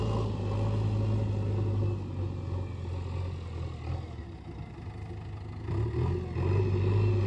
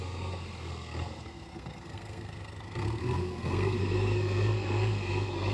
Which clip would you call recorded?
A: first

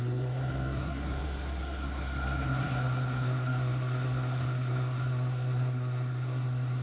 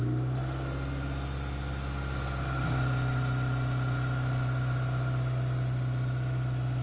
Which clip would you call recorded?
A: second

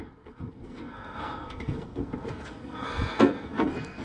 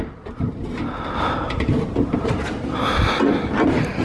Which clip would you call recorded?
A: second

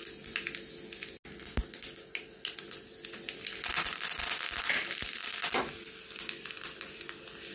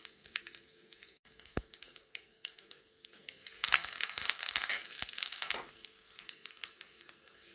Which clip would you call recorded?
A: first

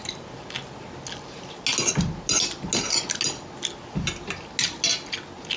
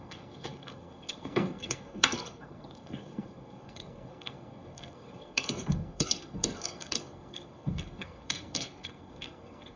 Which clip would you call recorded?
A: first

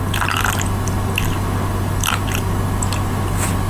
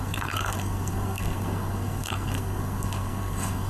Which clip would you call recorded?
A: first